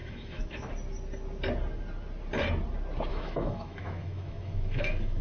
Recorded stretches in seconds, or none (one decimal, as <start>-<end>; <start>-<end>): 0.7-3.1